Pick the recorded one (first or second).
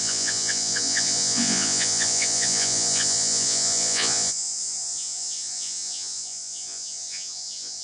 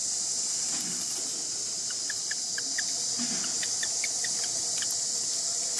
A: second